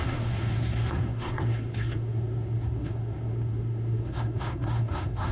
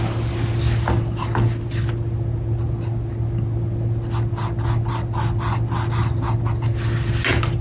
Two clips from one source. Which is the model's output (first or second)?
first